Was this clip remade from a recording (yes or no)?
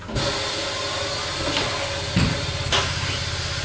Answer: no